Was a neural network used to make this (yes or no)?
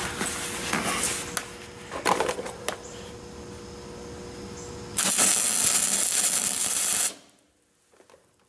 no